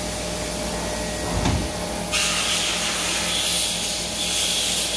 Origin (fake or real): real